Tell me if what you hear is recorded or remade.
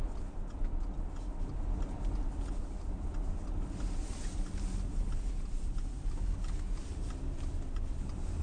recorded